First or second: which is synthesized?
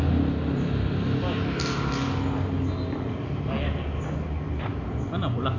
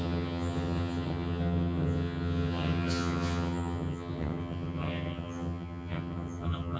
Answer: second